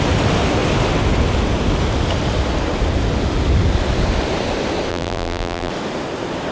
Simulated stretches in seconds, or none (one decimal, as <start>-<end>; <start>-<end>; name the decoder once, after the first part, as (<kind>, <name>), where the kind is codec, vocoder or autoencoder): 4.9-5.7 (vocoder, BigVGAN v2)